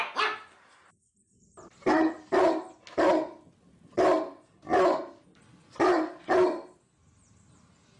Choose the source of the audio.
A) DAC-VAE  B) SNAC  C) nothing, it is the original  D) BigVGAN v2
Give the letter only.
C